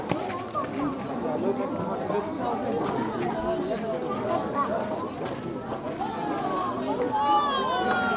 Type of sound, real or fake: real